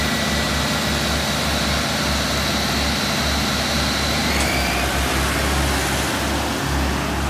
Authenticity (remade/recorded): recorded